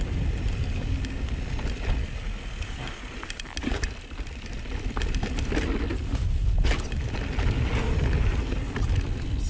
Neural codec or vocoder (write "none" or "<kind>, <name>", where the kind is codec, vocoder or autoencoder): none